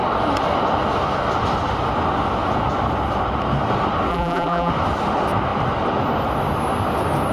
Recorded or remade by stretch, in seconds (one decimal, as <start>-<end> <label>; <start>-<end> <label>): 0.0-4.1 recorded; 4.1-4.7 remade; 4.7-7.3 recorded